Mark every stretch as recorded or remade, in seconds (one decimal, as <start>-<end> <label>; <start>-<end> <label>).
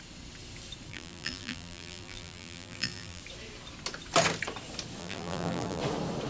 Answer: 0.0-0.9 recorded; 0.9-3.2 remade; 3.2-5.0 recorded; 5.0-5.8 remade; 5.8-6.3 recorded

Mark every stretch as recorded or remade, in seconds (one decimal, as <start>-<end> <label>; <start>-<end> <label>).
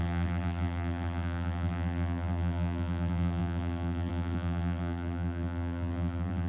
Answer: 0.0-6.5 remade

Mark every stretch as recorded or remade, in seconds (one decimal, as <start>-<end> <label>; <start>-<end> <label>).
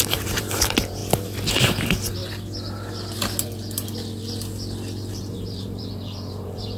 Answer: 0.0-1.0 remade; 1.0-1.5 recorded; 1.5-2.2 remade; 2.2-5.1 recorded; 5.1-6.8 remade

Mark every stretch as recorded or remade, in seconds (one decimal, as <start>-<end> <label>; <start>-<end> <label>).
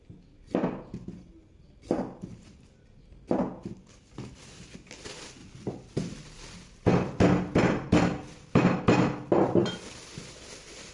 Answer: 0.0-5.4 recorded; 5.4-6.9 remade; 6.9-10.9 recorded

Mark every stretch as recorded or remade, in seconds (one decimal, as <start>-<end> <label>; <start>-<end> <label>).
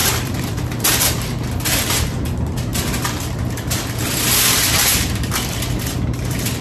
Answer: 0.0-0.9 remade; 0.9-2.7 recorded; 2.7-6.6 remade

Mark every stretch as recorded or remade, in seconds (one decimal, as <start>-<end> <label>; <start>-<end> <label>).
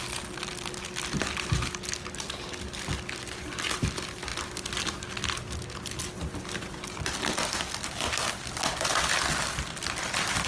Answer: 0.0-10.5 recorded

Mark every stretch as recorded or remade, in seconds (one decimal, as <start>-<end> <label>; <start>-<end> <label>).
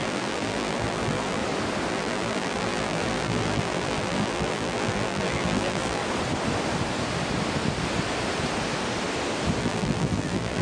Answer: 0.0-1.4 remade; 1.4-1.9 recorded; 1.9-6.0 remade; 6.0-9.6 recorded; 9.6-10.6 remade